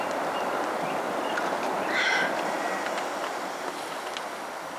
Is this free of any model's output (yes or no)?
yes